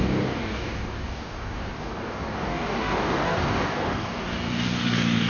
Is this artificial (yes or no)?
yes